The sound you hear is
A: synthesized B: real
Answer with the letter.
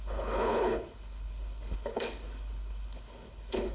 A